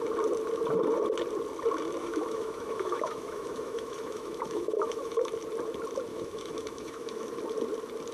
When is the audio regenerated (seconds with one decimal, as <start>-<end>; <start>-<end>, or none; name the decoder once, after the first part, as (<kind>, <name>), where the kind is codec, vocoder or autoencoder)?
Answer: 2.0-5.2 (autoencoder, DAC-VAE); 6.1-7.4